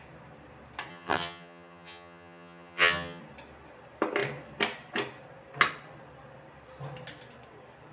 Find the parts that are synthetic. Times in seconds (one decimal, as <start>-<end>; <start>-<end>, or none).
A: 0.9-3.2